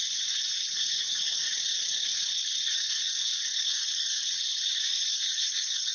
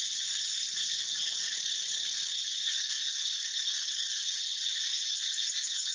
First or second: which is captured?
second